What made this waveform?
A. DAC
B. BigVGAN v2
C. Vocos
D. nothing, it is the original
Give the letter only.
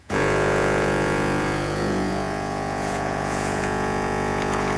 C